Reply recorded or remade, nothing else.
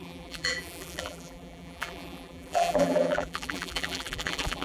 remade